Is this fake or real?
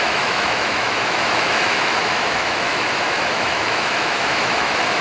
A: fake